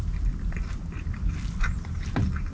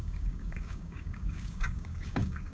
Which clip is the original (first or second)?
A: first